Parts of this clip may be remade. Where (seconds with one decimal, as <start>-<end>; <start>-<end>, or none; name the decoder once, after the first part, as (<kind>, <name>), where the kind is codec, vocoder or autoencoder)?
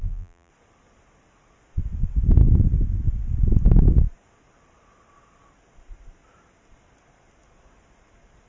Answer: 0.0-0.5 (vocoder, BigVGAN v2)